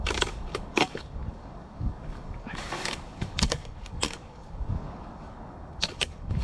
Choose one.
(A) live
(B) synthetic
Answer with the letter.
B